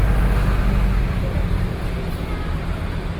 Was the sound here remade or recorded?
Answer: recorded